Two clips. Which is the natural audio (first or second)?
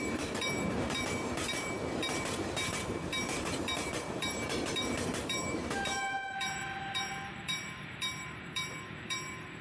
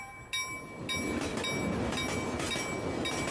second